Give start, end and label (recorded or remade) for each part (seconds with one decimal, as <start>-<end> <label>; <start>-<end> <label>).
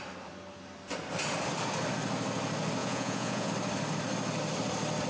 0.0-2.8 recorded; 2.8-3.5 remade; 3.5-5.1 recorded